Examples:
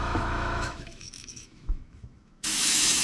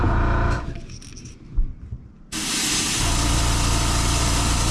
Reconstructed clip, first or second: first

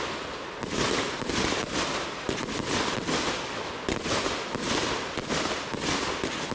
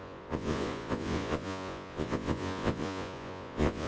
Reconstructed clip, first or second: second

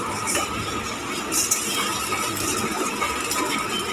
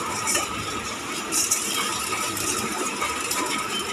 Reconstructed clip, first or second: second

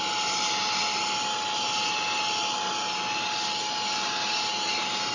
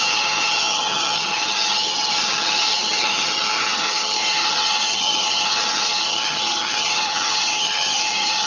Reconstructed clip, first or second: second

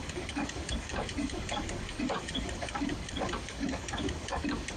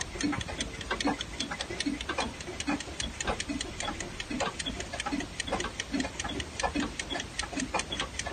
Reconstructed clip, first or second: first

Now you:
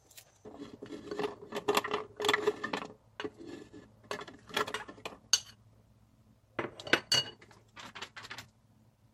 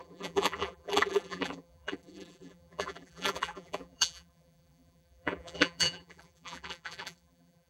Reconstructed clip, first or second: second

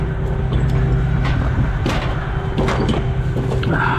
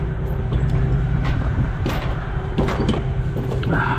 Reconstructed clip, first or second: second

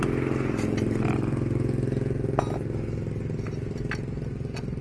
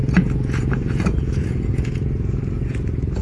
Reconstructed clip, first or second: second